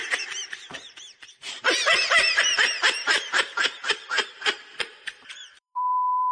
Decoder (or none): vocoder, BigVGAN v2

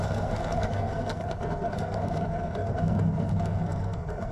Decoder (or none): codec, SNAC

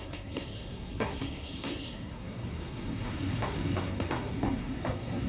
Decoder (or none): codec, SNAC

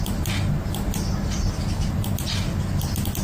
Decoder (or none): none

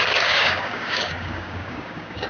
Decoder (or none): codec, DAC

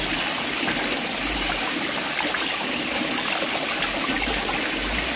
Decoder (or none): none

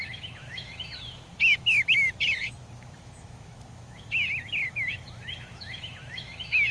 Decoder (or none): autoencoder, DAC-VAE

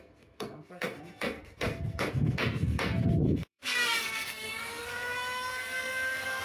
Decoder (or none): codec, SNAC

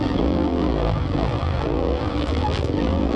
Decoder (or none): vocoder, BigVGAN v2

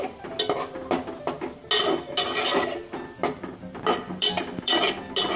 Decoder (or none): none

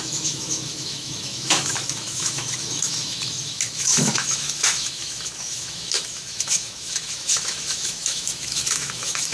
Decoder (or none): autoencoder, DAC-VAE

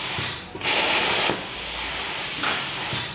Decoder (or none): none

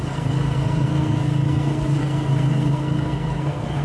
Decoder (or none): codec, SNAC